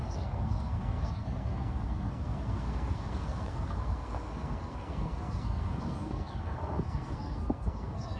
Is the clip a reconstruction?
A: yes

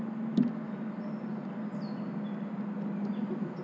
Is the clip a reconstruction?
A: no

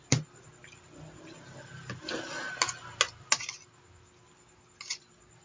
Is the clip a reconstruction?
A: no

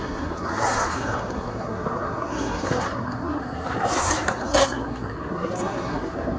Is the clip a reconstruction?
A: yes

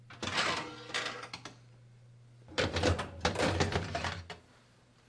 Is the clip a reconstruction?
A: no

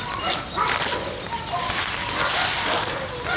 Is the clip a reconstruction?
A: no